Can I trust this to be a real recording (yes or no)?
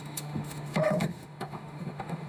no